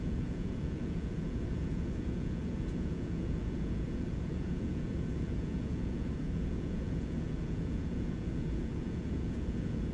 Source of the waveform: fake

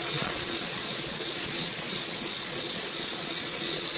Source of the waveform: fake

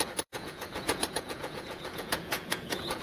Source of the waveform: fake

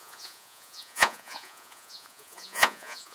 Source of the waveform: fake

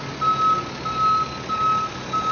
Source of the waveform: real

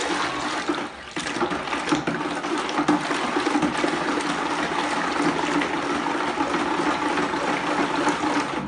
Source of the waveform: real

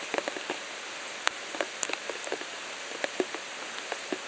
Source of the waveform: real